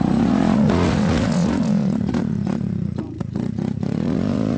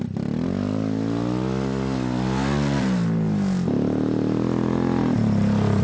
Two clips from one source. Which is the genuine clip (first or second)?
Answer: second